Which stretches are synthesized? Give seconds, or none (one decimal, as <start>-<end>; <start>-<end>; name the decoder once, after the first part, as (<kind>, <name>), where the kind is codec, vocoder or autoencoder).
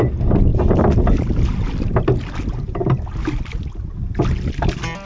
none